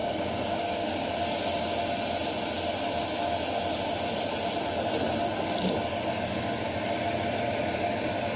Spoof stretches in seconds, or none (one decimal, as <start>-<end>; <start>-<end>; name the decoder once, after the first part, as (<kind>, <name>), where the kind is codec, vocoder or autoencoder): 0.0-1.1 (codec, DAC)